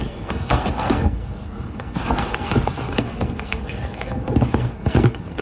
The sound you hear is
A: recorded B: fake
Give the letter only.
B